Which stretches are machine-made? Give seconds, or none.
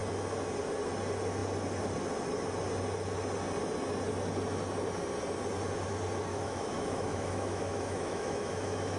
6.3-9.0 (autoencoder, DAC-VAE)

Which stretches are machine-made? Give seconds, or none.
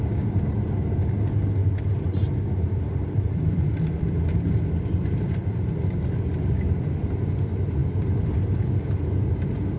1.6-5.5 (vocoder, BigVGAN v2); 7.8-9.1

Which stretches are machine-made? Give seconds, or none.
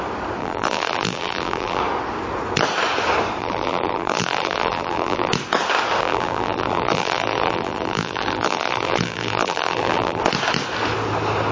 0.4-1.8 (vocoder, BigVGAN v2); 3.4-5.3; 6.0-10.2